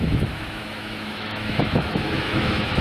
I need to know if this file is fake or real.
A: fake